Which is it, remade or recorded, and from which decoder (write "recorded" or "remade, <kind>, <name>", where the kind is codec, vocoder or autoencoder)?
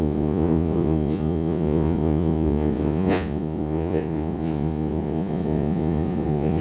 remade, vocoder, Vocos